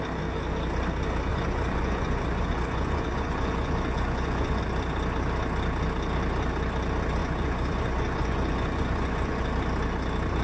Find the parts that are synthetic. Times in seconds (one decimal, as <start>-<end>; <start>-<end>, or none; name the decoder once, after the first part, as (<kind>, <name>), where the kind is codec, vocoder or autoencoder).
1.3-4.6 (vocoder, Vocos); 7.2-9.5